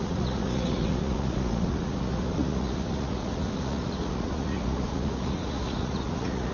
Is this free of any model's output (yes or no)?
no